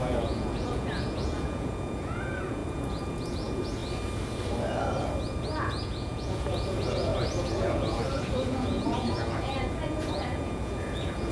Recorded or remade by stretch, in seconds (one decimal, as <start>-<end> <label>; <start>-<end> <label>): 0.0-3.8 remade; 3.8-5.2 recorded; 5.2-11.3 remade